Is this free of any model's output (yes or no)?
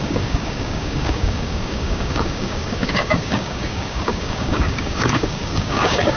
no